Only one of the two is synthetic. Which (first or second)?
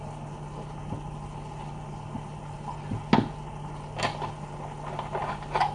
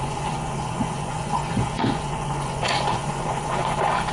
second